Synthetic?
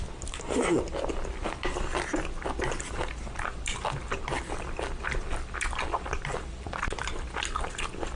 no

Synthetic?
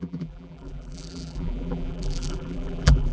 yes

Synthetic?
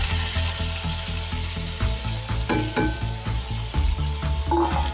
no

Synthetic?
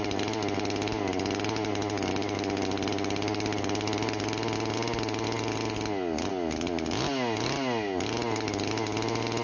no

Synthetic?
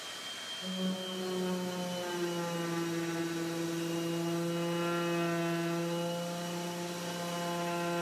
no